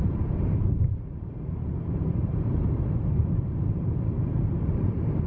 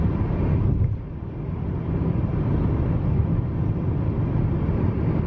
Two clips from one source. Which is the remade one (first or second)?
first